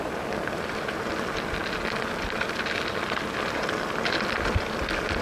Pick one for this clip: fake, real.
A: real